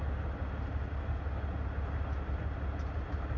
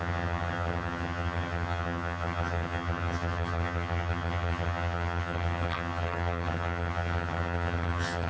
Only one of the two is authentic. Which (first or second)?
first